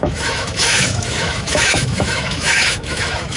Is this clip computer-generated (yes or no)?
yes